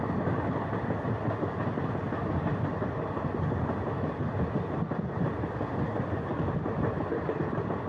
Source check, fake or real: real